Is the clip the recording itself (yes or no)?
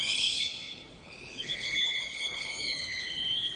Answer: no